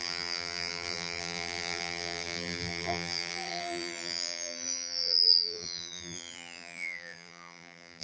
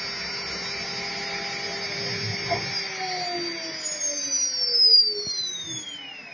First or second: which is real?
second